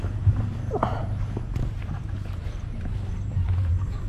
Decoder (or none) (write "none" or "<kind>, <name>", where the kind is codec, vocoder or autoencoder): vocoder, BigVGAN v2